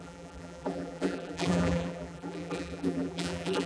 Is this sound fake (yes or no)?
yes